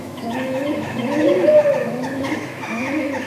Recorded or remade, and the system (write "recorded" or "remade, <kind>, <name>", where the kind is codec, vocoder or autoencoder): remade, autoencoder, DAC-VAE